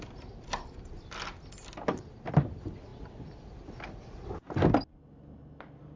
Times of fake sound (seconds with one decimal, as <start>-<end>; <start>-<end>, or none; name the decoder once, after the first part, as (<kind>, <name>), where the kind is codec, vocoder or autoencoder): none